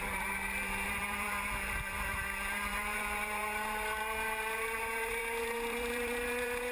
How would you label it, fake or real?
fake